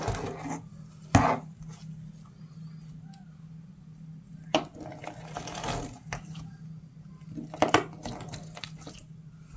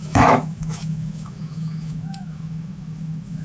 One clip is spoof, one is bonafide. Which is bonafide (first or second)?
first